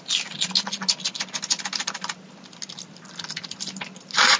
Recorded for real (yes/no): yes